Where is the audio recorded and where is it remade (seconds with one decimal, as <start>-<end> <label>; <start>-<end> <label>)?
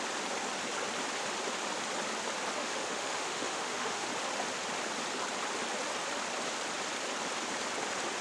0.0-2.6 recorded; 2.6-4.1 remade; 4.1-8.2 recorded